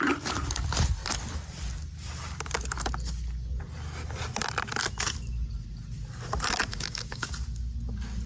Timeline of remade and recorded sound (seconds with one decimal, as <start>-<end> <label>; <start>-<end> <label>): 0.0-6.7 recorded; 6.7-7.3 remade; 7.3-8.3 recorded